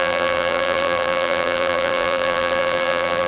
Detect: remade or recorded remade